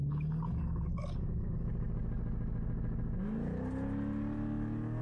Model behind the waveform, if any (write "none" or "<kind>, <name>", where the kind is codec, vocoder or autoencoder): none